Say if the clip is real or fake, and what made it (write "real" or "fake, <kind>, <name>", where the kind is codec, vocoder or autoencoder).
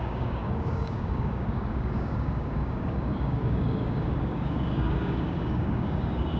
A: fake, codec, DAC